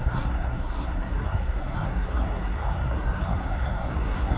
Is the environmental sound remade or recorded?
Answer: remade